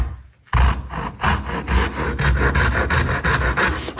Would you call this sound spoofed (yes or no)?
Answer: no